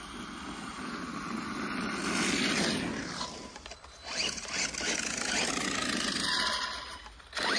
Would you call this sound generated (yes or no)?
no